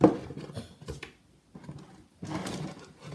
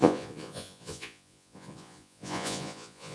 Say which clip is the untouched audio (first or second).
first